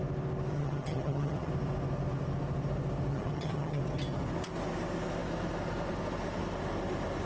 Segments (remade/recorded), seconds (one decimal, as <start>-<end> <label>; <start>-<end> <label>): 0.0-0.5 recorded; 0.5-1.5 remade; 1.5-3.1 recorded; 3.1-3.8 remade; 3.8-7.3 recorded